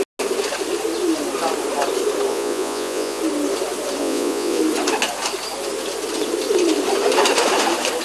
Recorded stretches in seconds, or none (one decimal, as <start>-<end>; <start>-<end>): 0.0-2.3; 3.2-4.0; 4.6-8.0